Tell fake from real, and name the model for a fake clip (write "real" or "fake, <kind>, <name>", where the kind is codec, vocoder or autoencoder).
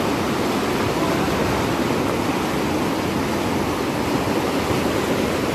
real